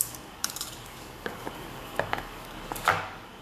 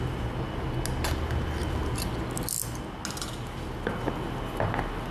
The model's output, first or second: first